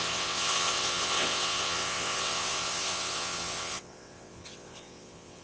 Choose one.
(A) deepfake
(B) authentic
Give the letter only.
A